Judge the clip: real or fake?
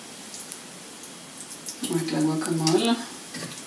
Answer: real